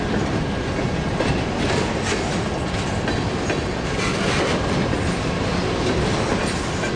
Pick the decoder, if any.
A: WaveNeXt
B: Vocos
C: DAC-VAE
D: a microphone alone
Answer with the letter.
D